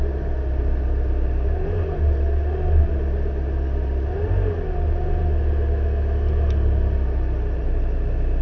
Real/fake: real